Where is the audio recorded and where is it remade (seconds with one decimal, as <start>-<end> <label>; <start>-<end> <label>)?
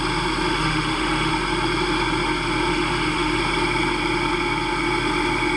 0.0-0.5 recorded; 0.5-1.3 remade; 1.3-2.7 recorded; 2.7-3.4 remade; 3.4-5.6 recorded